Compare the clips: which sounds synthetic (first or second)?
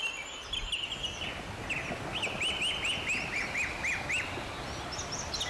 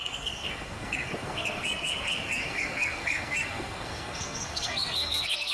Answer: second